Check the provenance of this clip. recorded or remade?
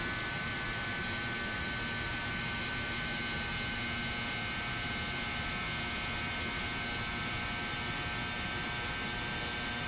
recorded